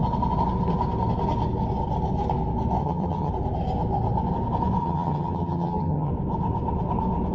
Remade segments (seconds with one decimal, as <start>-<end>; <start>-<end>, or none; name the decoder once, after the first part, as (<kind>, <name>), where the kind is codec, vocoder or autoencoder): 2.8-3.3 (vocoder, HiFi-GAN); 4.8-6.1